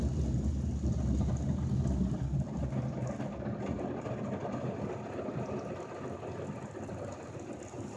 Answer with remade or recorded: recorded